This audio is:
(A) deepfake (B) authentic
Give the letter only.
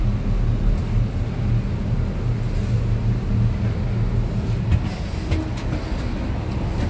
B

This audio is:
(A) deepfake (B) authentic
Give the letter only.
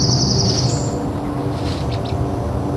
B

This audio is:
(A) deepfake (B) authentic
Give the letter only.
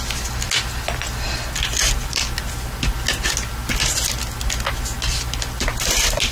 B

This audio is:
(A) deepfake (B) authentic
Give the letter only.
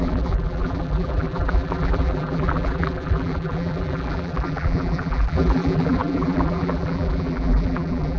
A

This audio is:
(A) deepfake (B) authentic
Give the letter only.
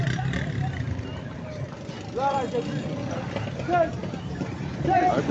B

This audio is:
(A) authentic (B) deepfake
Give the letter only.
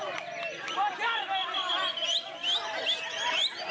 A